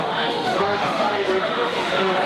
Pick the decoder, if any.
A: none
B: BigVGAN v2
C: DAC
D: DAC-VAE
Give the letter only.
D